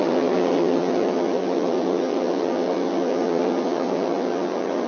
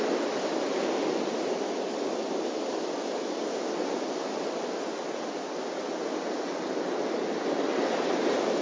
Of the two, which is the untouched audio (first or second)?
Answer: second